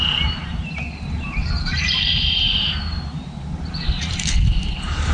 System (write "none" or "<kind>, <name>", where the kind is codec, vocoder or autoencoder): vocoder, BigVGAN v2